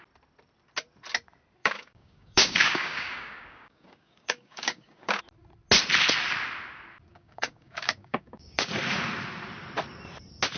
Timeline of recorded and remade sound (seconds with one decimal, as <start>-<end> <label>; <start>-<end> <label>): 0.0-1.6 recorded; 1.6-5.2 remade; 5.2-7.1 recorded; 7.1-8.7 remade; 8.7-10.6 recorded